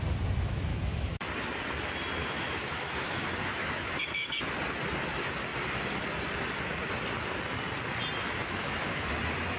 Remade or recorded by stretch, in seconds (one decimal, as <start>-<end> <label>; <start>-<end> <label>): 0.0-0.7 recorded; 0.7-1.3 remade; 1.3-2.2 recorded; 2.2-3.9 remade; 3.9-8.4 recorded; 8.4-9.1 remade; 9.1-9.6 recorded